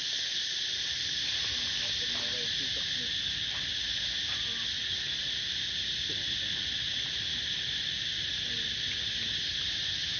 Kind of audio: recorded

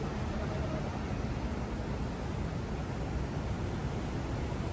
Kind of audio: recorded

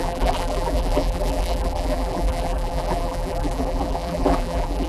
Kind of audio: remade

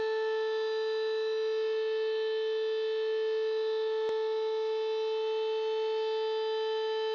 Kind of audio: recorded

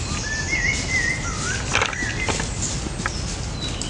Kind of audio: recorded